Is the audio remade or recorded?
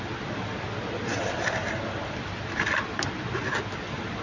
recorded